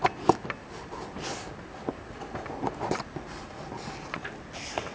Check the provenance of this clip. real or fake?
real